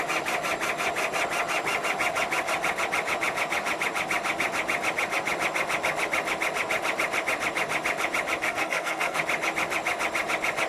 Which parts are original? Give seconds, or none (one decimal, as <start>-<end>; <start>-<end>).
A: 0.0-8.4; 9.2-10.7